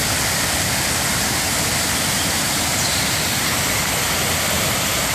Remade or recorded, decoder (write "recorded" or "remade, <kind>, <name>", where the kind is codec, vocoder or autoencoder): recorded